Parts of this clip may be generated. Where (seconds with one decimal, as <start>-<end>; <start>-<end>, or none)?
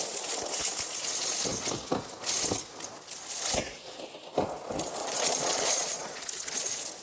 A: 5.0-6.2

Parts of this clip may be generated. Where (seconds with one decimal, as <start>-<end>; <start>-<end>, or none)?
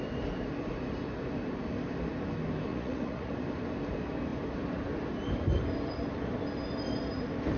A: 2.7-3.3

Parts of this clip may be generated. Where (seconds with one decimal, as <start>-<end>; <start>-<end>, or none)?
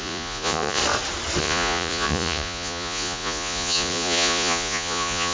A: 0.0-0.8; 1.4-5.3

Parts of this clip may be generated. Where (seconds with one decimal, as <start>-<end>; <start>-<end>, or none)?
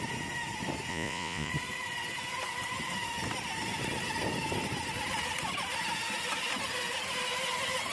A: 0.9-1.5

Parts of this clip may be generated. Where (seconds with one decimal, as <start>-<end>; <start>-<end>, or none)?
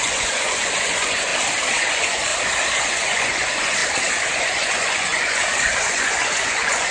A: 0.0-1.3; 1.9-2.3; 2.8-3.8; 4.3-6.9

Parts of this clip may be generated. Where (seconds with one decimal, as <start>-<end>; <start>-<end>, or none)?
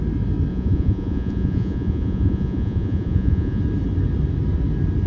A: 0.5-3.6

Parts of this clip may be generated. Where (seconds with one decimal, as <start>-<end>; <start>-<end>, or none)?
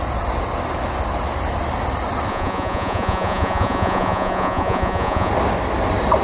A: 2.3-5.3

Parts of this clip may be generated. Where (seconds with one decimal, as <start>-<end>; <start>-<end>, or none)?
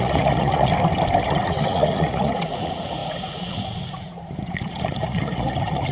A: 0.0-0.7; 1.2-5.9